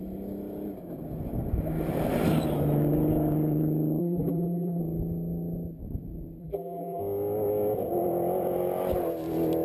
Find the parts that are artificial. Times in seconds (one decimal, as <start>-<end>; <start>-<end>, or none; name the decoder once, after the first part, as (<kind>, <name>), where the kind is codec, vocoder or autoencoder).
4.0-4.8 (vocoder, BigVGAN v2); 6.4-7.0